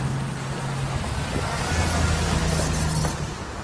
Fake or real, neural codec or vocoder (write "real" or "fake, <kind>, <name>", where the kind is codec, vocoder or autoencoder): real